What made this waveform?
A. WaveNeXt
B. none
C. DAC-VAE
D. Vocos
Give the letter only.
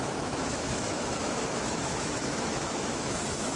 C